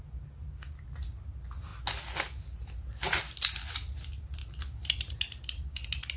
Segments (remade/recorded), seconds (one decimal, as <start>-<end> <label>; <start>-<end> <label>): 0.0-6.2 recorded